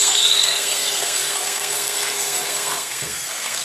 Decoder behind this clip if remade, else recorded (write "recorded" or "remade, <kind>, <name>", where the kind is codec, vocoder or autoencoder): remade, codec, SNAC